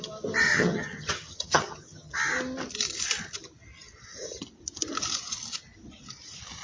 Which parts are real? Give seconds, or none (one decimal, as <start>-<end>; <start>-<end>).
0.0-0.4; 2.1-6.6